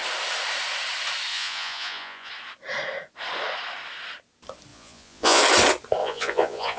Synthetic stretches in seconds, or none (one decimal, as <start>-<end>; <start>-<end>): 1.3-2.3; 4.7-5.4; 6.0-6.8